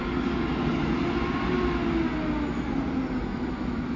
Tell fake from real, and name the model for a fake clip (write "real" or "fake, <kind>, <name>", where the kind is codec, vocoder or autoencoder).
real